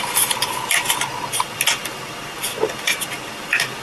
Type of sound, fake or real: real